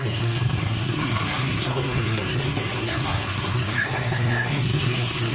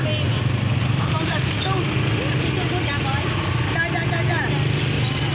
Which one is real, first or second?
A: second